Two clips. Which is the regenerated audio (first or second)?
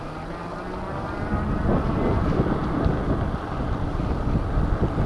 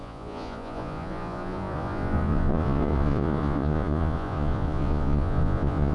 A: second